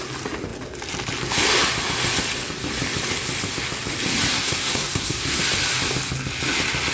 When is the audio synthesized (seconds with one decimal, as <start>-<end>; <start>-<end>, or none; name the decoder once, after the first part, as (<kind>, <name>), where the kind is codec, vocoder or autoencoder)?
4.3-5.4 (codec, SNAC)